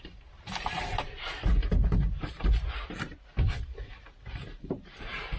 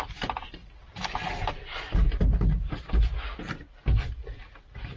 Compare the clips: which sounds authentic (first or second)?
second